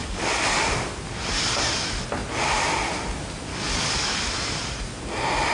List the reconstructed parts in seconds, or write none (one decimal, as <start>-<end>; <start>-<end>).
0.0-0.7; 3.5-4.3